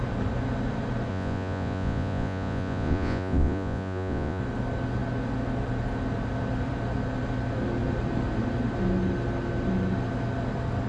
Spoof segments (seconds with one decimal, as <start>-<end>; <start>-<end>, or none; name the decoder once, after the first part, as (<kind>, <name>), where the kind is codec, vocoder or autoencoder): 1.1-4.4 (vocoder, Vocos)